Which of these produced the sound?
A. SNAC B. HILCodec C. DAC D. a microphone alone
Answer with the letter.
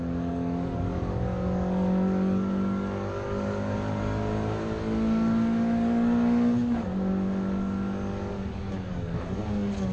C